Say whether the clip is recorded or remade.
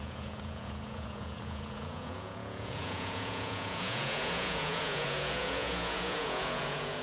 remade